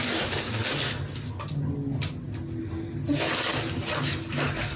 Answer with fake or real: real